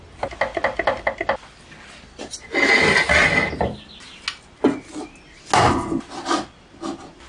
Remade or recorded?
recorded